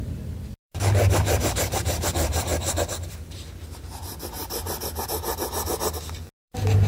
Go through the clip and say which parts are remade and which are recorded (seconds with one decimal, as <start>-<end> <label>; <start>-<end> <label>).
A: 0.0-4.4 remade; 4.4-6.4 recorded; 6.4-6.9 remade